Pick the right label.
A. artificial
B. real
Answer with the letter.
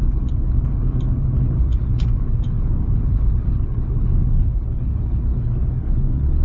A